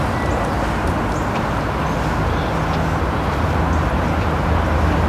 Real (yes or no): yes